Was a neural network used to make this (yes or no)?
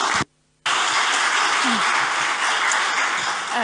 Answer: no